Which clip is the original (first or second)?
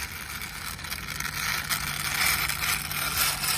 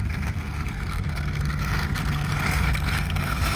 first